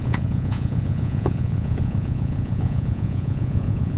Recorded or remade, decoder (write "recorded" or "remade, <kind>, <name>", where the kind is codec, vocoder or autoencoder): remade, vocoder, Vocos